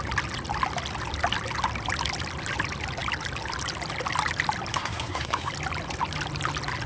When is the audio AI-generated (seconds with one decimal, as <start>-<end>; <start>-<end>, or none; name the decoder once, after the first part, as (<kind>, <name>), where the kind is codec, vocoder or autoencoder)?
4.7-5.5 (codec, SNAC)